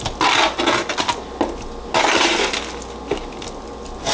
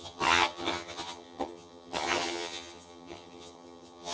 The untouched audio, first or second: first